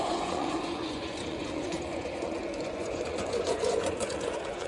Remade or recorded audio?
remade